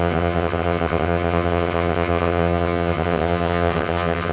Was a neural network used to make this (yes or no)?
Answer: yes